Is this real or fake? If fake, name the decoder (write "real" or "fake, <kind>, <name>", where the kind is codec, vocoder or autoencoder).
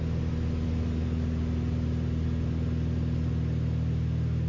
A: real